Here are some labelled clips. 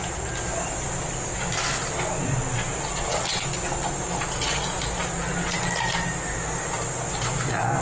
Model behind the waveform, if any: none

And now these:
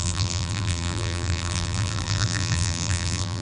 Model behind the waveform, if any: vocoder, BigVGAN v2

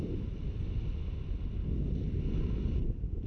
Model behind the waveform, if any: none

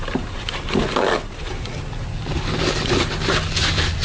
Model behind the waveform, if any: none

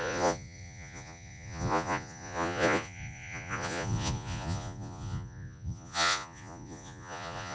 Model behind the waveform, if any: vocoder, Vocos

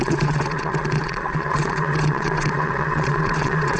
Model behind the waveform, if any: vocoder, WaveNeXt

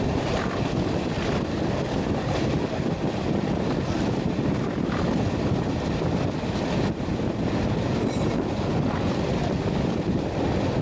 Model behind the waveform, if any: none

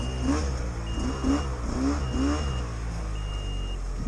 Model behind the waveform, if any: none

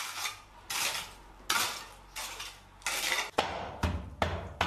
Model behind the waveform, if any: none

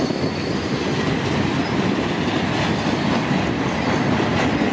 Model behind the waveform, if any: none